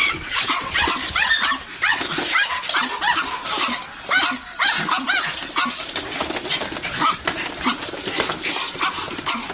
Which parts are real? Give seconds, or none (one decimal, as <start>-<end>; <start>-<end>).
0.7-9.5